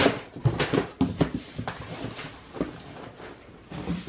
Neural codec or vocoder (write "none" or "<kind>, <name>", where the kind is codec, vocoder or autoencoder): none